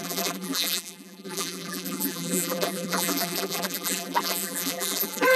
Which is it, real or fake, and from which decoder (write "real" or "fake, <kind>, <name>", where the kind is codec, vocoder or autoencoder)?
fake, vocoder, BigVGAN v2